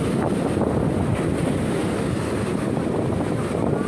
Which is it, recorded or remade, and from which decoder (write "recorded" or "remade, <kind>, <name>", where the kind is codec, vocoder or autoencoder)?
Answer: recorded